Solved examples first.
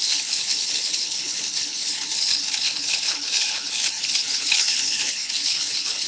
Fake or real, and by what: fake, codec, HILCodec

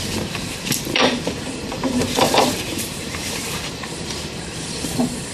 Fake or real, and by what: fake, vocoder, BigVGAN v2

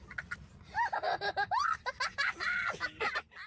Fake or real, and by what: real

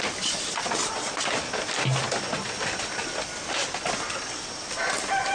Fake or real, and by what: real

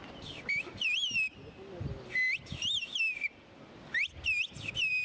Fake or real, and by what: real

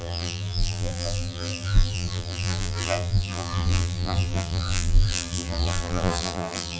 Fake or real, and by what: fake, vocoder, BigVGAN v2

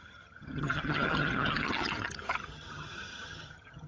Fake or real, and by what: fake, vocoder, HiFi-GAN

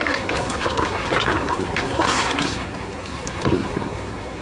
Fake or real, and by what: fake, codec, SNAC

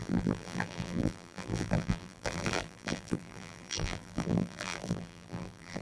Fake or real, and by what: fake, vocoder, BigVGAN v2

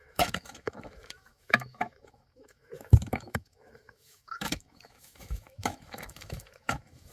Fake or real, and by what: fake, autoencoder, DAC-VAE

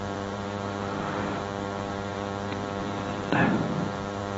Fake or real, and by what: fake, vocoder, BigVGAN v2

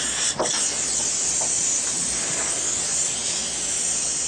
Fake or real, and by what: real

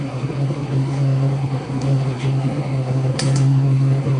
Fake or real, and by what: fake, codec, SNAC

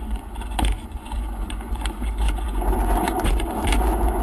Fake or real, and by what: fake, vocoder, Vocos